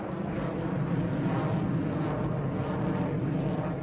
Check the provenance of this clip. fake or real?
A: real